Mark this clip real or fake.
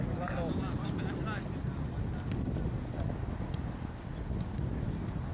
real